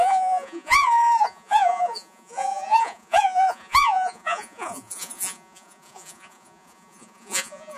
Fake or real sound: fake